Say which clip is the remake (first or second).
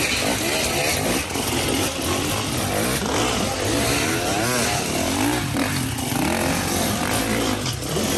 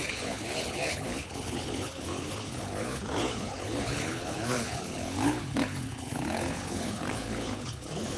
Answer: second